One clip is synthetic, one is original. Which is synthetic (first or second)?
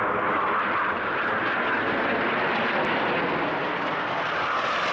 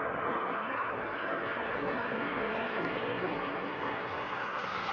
second